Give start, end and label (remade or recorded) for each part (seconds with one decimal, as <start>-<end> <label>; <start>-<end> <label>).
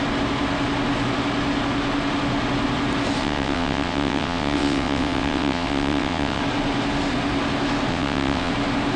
0.0-3.2 recorded; 3.2-6.4 remade; 6.4-7.9 recorded; 7.9-8.5 remade; 8.5-9.0 recorded